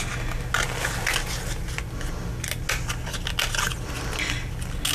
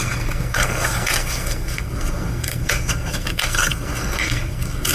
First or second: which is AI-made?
second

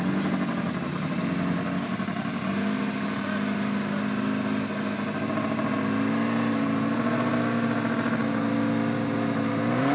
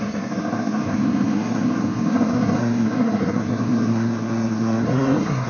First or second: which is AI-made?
second